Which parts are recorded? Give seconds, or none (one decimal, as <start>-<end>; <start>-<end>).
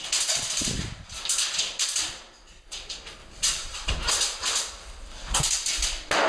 0.0-3.2; 3.9-6.3